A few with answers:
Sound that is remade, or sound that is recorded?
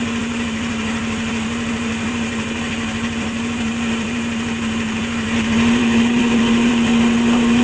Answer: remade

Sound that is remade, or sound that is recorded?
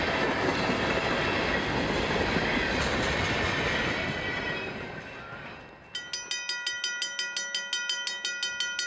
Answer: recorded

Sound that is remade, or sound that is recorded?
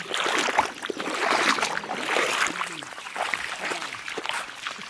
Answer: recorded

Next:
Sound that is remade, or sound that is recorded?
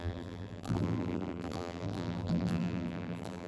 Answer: remade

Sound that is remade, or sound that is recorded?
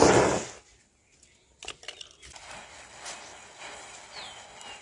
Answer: recorded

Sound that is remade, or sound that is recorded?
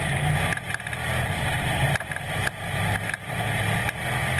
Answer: recorded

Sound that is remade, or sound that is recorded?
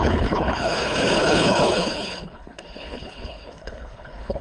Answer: remade